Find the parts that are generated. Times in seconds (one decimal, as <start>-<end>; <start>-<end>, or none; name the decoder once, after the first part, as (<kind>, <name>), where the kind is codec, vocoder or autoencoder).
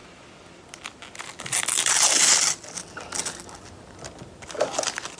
none